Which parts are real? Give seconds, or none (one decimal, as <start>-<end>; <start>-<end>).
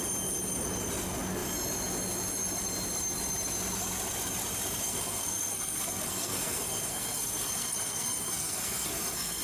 0.0-4.8